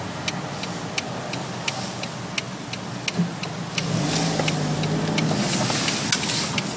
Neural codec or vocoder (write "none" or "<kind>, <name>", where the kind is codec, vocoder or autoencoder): none